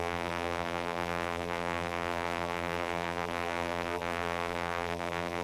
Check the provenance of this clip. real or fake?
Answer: fake